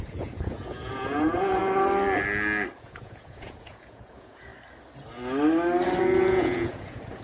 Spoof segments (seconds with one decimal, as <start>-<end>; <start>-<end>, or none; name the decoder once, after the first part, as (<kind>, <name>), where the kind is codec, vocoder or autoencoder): 0.0-1.6 (vocoder, Vocos); 2.8-4.5; 6.0-7.2